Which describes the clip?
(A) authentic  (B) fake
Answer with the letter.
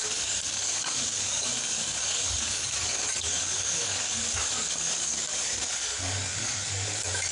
B